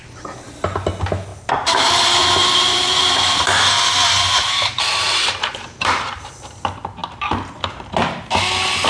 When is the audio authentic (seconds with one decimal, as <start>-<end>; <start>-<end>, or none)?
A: 0.0-1.3; 6.5-8.9